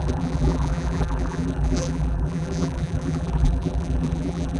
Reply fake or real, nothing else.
fake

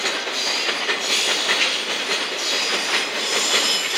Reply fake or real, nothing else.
real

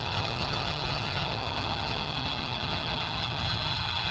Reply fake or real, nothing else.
fake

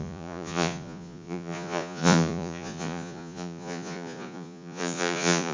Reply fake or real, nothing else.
fake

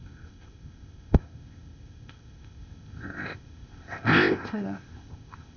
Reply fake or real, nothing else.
fake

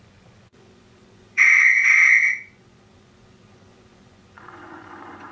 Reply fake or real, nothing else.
fake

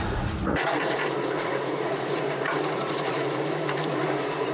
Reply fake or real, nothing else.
fake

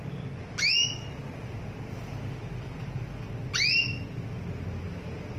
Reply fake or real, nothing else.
real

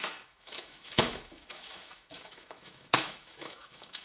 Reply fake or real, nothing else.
fake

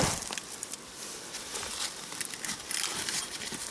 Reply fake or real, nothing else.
real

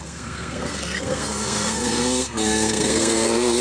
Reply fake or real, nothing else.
fake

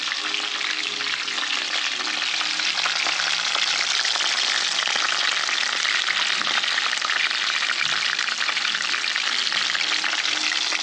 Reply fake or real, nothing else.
real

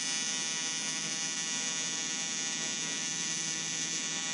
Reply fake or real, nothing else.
real